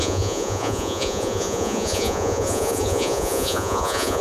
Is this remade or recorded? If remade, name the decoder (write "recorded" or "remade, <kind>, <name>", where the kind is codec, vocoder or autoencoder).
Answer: remade, vocoder, Vocos